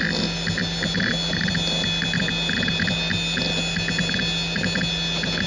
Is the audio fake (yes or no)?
no